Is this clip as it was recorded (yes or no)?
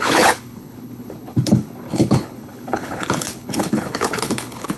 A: no